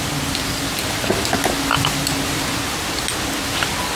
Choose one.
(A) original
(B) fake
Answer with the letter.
A